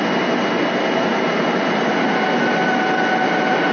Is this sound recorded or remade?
recorded